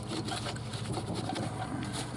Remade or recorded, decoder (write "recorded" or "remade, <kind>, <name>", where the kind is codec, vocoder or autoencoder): recorded